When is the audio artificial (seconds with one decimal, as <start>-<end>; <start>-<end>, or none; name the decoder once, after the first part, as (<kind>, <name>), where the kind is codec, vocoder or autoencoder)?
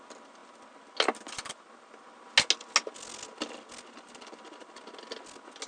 none